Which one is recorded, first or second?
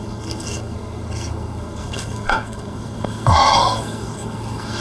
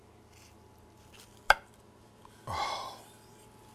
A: second